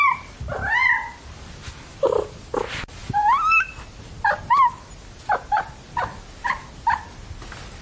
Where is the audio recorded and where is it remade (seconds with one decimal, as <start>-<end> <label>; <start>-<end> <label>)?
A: 0.0-7.8 recorded